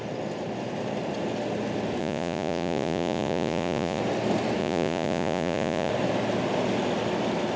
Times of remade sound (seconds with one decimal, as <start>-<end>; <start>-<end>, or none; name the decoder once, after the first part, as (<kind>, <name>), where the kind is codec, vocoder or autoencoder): 2.0-4.0 (vocoder, Vocos); 4.6-5.9

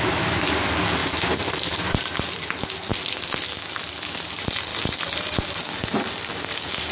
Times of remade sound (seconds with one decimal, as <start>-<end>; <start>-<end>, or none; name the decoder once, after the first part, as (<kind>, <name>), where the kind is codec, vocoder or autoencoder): none

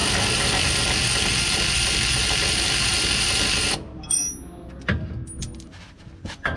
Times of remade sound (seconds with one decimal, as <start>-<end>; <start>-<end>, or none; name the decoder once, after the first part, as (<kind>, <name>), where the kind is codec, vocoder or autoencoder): none

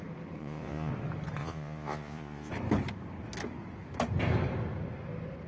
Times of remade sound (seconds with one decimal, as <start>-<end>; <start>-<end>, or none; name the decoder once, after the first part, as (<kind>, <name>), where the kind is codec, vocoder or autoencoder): 0.4-0.9 (vocoder, Vocos); 1.4-2.5